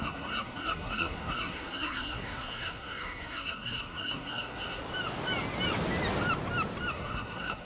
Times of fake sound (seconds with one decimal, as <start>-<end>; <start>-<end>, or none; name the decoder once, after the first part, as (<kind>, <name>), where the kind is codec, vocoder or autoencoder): 0.0-4.8 (codec, SNAC); 6.9-7.6